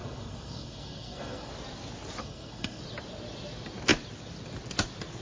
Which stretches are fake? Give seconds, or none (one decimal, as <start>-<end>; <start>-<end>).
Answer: 0.0-1.5; 2.2-2.8